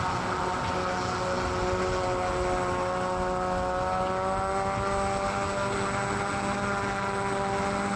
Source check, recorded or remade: recorded